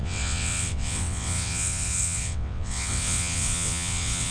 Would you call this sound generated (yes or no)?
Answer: yes